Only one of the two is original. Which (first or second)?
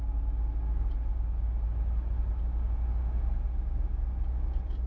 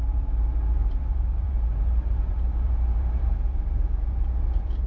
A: first